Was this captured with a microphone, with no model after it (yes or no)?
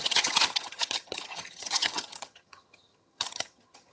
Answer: no